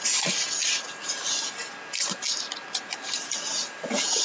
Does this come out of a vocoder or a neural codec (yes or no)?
no